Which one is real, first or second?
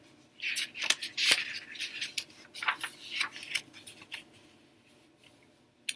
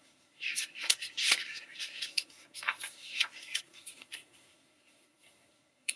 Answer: first